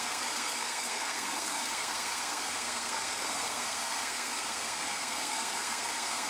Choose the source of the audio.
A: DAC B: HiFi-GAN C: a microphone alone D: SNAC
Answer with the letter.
D